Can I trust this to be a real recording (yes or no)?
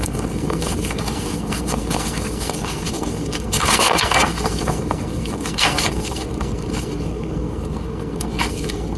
no